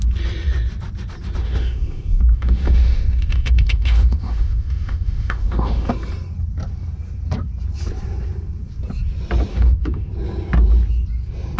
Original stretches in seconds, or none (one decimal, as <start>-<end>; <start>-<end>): 0.0-1.4; 5.9-9.5; 10.1-11.6